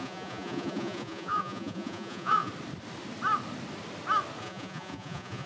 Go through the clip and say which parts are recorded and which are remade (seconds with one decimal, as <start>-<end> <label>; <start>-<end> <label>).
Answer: 0.0-2.5 remade; 2.5-4.4 recorded; 4.4-5.5 remade